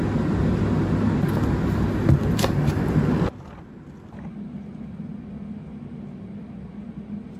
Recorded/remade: recorded